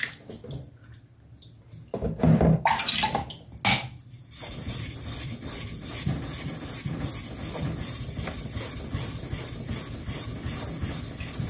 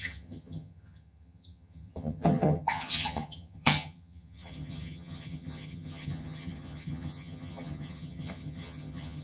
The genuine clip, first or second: first